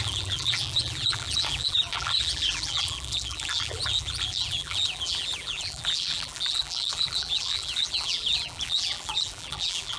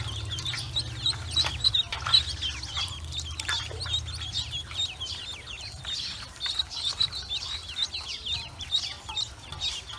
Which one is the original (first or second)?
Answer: second